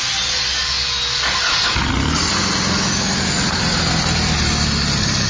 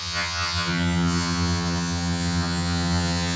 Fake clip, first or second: second